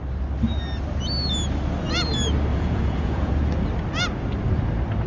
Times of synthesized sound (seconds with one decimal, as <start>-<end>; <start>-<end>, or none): 2.5-3.3